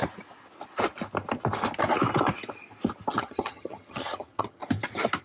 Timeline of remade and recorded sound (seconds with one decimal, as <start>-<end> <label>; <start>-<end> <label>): 0.0-3.1 recorded; 3.1-4.6 remade; 4.6-5.2 recorded

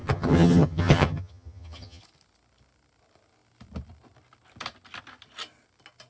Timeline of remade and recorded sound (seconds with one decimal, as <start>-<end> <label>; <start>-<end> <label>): 0.0-2.0 remade; 2.0-6.1 recorded

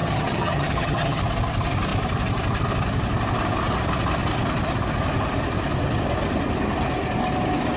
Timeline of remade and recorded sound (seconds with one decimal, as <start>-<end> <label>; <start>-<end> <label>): 0.0-1.2 remade; 1.2-7.8 recorded

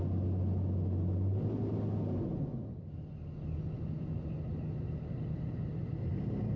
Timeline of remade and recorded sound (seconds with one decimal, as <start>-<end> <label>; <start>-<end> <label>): 0.0-6.6 recorded

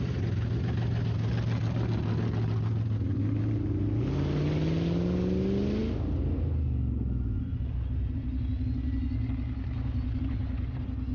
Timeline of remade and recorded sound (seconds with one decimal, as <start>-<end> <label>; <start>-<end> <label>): 0.0-11.1 recorded